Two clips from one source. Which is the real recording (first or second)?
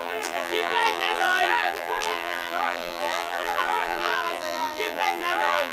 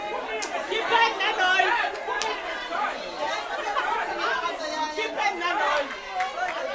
second